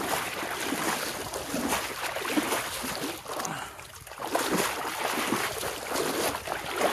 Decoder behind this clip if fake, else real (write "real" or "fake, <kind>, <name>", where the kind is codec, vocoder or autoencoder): real